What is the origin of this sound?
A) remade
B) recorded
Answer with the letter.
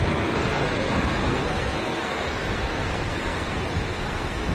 A